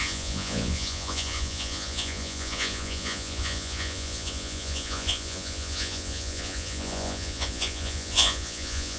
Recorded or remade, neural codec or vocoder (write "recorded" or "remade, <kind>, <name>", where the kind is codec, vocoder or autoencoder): remade, vocoder, Vocos